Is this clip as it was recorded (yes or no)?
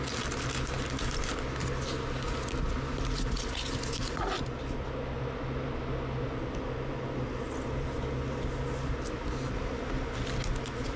yes